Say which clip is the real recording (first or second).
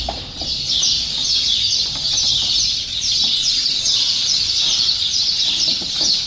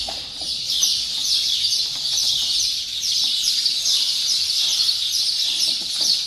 first